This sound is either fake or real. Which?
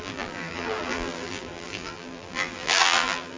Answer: fake